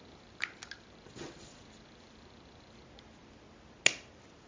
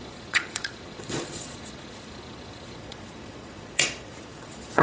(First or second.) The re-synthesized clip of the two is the second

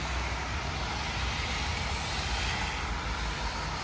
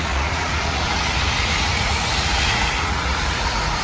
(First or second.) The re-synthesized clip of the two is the second